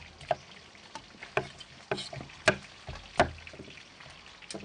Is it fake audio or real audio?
real